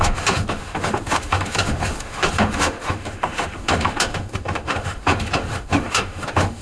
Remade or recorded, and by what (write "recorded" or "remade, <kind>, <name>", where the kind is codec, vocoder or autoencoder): remade, autoencoder, DAC-VAE